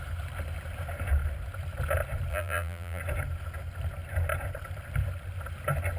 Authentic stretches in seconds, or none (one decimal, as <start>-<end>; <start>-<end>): 0.0-2.3; 3.0-6.0